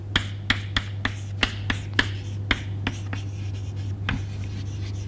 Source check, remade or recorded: recorded